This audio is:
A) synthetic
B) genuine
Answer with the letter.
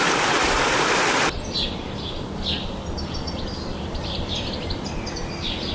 A